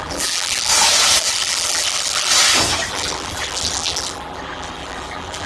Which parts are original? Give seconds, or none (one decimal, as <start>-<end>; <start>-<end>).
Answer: 0.7-1.2; 2.3-2.9